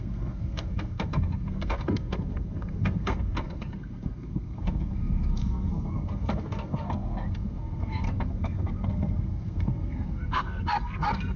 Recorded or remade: remade